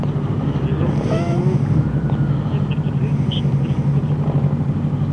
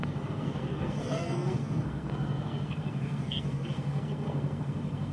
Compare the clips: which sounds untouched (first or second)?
first